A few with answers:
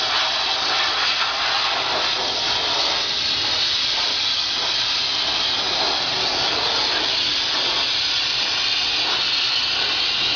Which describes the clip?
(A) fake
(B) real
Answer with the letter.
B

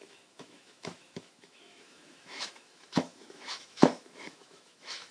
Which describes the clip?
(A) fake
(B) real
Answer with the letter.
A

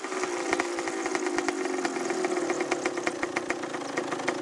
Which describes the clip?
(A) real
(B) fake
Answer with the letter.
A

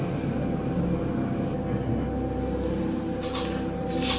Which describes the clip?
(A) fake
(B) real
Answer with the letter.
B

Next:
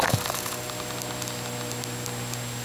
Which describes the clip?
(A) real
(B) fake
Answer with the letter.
A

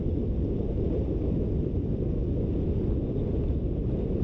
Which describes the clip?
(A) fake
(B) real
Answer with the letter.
B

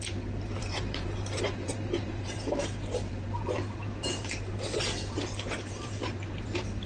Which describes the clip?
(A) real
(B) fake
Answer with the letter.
B